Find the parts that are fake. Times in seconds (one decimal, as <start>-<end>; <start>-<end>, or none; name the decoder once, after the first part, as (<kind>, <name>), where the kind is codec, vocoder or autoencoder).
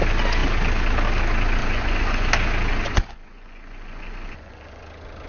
1.6-2.3 (vocoder, Vocos); 2.7-4.8